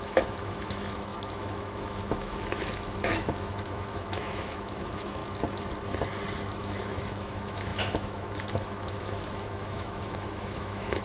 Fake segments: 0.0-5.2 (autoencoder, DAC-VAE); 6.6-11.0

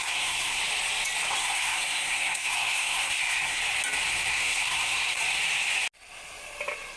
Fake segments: 0.0-0.6 (codec, SNAC); 1.3-3.6; 4.3-5.2

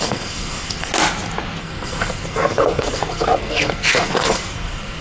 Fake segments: 0.0-0.9 (codec, SNAC); 1.6-5.0

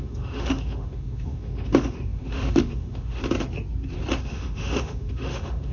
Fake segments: 0.0-3.2 (autoencoder, DAC-VAE); 4.2-5.7

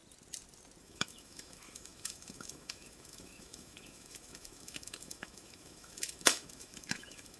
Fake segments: 0.8-7.4 (autoencoder, DAC-VAE)